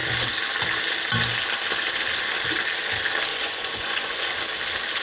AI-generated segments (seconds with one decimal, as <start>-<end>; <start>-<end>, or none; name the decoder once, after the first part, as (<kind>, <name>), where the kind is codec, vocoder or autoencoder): 3.3-4.3 (vocoder, Vocos)